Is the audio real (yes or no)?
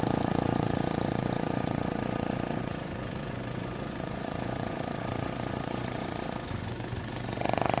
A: no